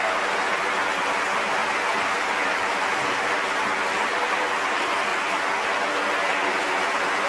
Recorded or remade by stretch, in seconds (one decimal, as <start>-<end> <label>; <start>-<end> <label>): 0.0-5.1 remade; 5.1-5.9 recorded; 5.9-7.3 remade